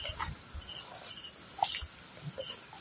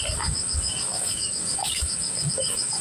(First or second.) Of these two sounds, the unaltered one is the first